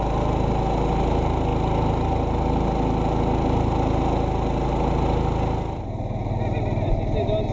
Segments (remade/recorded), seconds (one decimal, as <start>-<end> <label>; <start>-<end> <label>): 0.0-7.5 recorded